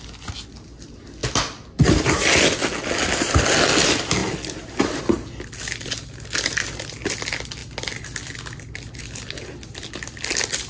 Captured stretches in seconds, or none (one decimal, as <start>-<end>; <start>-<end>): 0.0-10.7